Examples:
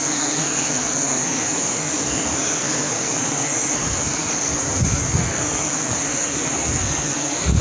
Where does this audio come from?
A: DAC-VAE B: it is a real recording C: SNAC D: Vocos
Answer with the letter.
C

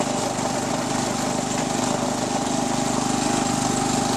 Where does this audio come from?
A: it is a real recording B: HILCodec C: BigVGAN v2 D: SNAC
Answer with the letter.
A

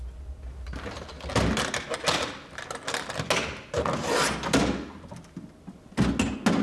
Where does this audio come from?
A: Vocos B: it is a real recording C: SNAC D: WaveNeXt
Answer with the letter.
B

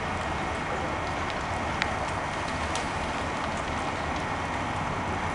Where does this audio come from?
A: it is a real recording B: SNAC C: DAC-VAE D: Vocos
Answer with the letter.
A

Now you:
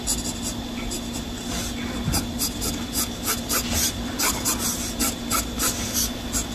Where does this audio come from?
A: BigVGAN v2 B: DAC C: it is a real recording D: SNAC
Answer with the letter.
C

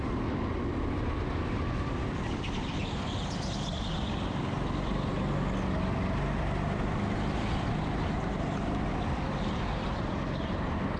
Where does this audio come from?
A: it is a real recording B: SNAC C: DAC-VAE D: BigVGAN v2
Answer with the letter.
A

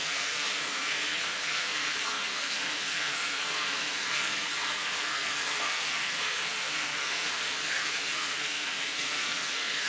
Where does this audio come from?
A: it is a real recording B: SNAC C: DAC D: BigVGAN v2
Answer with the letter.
B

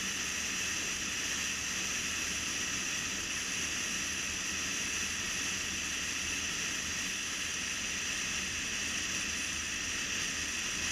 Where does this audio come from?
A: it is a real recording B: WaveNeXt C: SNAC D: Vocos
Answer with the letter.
A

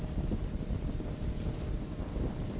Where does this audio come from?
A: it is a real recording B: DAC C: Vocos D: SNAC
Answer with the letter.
A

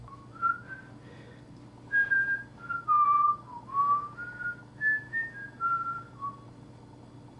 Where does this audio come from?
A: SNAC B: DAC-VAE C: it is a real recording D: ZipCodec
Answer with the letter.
C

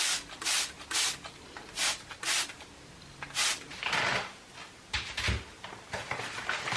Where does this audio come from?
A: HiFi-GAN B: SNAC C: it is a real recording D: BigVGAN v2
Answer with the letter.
C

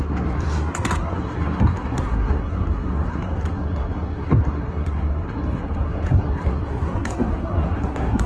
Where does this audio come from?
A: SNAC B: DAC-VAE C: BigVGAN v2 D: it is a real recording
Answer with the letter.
A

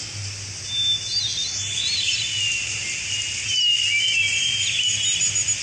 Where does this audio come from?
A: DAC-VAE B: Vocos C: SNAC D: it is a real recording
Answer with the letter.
D